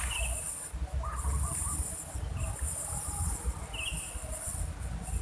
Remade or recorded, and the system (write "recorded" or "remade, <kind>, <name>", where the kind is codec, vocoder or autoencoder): remade, vocoder, BigVGAN v2